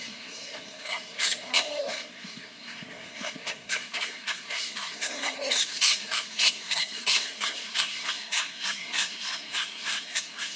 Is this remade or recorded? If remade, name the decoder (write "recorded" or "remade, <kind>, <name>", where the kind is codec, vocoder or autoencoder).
remade, codec, SNAC